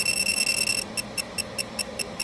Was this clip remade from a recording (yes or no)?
no